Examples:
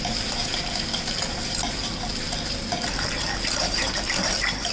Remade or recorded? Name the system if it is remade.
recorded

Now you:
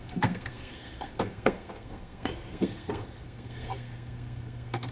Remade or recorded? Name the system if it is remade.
remade, codec, SNAC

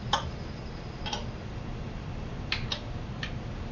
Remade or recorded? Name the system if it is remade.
recorded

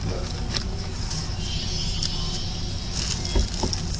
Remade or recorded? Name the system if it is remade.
recorded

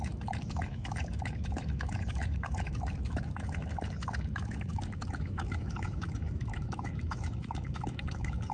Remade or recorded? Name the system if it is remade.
remade, autoencoder, DAC-VAE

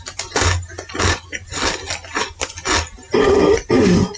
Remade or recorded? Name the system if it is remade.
recorded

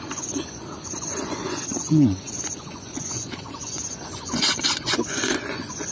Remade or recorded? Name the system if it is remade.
remade, vocoder, Vocos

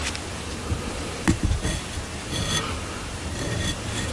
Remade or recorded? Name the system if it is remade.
recorded